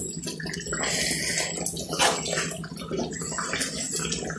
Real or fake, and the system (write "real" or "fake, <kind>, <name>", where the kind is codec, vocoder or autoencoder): real